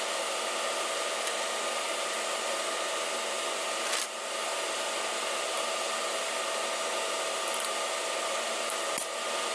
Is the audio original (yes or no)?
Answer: yes